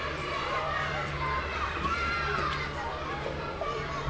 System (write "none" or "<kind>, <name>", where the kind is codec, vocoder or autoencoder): vocoder, BigVGAN v2